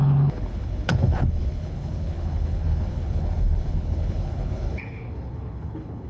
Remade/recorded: remade